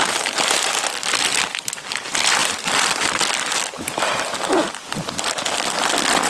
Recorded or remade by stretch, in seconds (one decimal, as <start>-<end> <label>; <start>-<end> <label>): 0.0-6.3 recorded

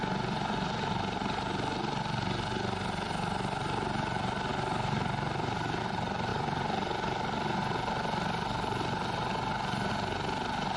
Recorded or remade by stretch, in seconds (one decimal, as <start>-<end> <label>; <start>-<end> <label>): 0.0-6.3 recorded; 6.3-9.9 remade; 9.9-10.8 recorded

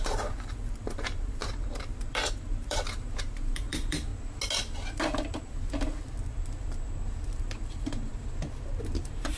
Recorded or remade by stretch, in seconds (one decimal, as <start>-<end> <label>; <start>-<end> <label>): 0.0-1.4 remade; 1.4-2.1 recorded; 2.1-4.1 remade; 4.1-7.3 recorded; 7.3-8.1 remade; 8.1-9.0 recorded; 9.0-9.4 remade